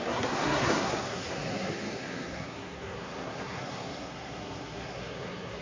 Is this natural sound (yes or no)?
no